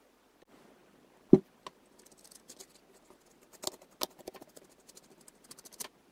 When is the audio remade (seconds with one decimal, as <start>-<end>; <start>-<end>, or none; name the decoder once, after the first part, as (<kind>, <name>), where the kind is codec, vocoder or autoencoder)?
none